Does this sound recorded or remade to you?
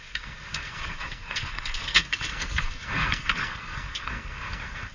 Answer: remade